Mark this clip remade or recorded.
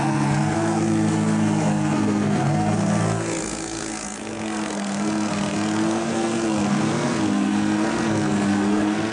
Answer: remade